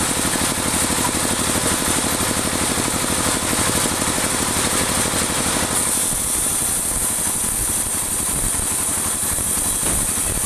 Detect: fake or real real